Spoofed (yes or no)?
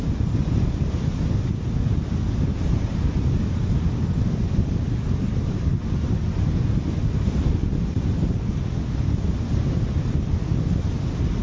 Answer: no